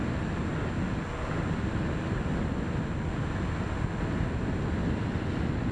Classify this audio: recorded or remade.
recorded